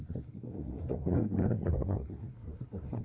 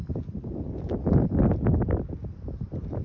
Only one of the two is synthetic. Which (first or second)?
first